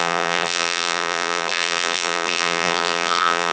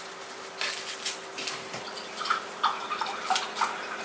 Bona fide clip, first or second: second